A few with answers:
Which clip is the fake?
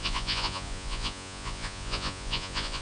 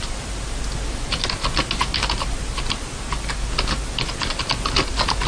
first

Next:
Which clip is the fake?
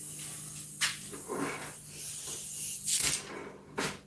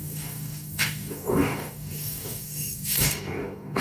second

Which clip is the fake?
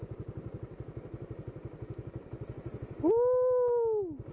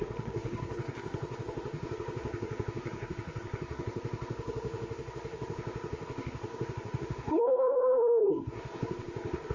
second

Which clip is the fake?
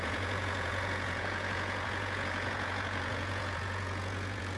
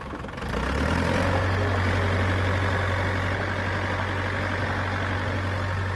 first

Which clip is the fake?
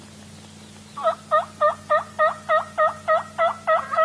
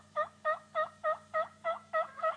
second